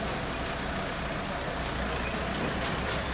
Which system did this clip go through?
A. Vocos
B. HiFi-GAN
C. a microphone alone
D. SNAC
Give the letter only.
C